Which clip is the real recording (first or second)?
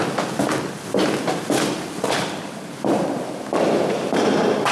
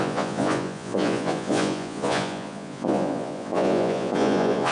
first